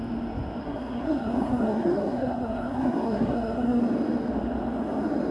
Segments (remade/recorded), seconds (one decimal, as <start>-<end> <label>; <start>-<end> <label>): 0.0-0.6 recorded; 0.6-3.8 remade; 3.8-5.3 recorded